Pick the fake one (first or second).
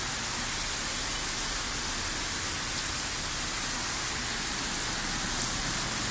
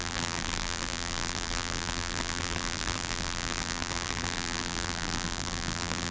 second